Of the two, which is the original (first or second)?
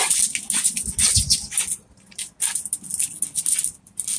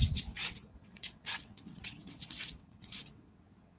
first